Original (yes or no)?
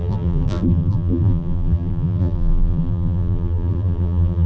no